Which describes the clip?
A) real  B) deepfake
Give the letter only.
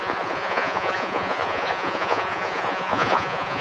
B